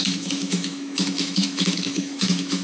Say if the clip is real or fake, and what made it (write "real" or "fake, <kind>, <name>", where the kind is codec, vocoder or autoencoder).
fake, autoencoder, DAC-VAE